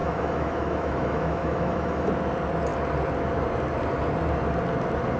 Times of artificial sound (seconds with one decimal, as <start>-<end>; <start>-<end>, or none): 0.0-2.1